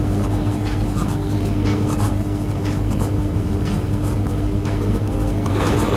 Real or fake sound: fake